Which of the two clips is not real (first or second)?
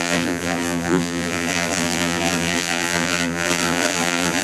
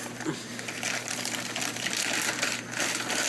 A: first